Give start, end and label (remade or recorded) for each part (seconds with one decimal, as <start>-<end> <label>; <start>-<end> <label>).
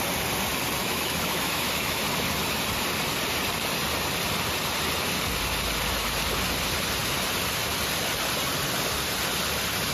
0.0-0.8 recorded; 0.8-2.0 remade; 2.0-9.9 recorded